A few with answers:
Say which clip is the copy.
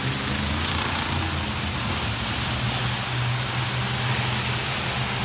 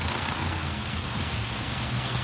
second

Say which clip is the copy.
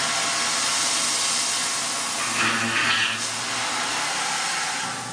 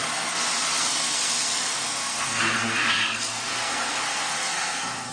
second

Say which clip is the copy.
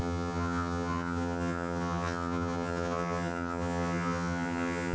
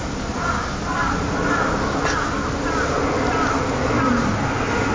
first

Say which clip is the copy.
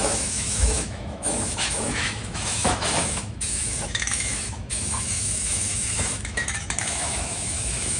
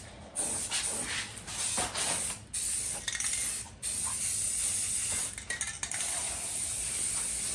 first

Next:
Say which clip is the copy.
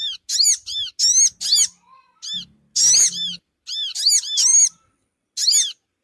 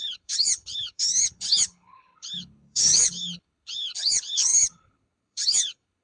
second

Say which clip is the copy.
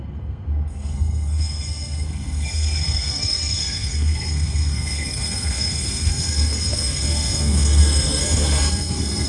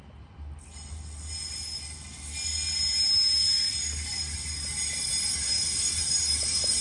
first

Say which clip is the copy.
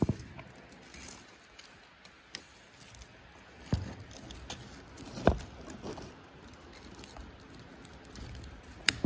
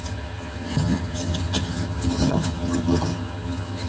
second